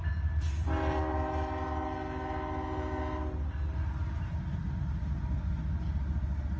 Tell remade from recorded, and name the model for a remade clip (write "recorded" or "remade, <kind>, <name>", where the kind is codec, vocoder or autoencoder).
recorded